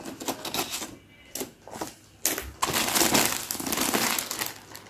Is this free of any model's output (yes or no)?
yes